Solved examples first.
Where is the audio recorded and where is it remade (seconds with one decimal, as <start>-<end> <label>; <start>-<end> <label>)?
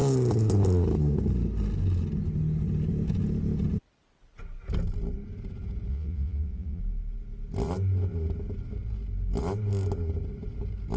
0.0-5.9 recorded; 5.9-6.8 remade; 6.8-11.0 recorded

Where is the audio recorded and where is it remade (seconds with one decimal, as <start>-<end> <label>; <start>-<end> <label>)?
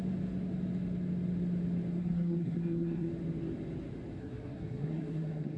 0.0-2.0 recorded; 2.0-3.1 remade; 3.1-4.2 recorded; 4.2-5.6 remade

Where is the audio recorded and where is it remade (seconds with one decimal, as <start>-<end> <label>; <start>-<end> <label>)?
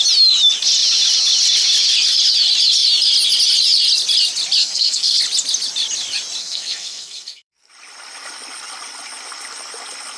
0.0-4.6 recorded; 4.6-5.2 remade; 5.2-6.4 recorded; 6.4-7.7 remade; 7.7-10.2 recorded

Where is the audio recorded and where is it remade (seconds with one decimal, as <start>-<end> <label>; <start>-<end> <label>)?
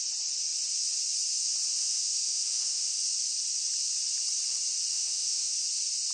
0.0-1.8 recorded; 1.8-3.0 remade; 3.0-4.9 recorded; 4.9-5.5 remade; 5.5-6.1 recorded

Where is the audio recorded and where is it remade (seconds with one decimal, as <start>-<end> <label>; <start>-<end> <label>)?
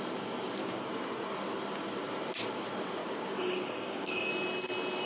0.0-0.6 recorded; 0.6-1.3 remade; 1.3-3.0 recorded; 3.0-4.3 remade; 4.3-5.1 recorded